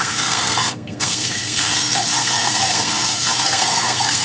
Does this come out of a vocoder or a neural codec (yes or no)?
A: yes